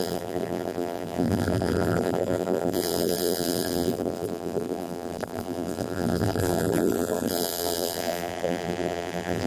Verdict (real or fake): fake